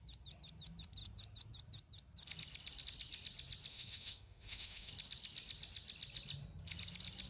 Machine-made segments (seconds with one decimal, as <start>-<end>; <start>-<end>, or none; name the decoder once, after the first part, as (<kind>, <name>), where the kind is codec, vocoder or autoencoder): 3.7-4.9 (autoencoder, DAC-VAE)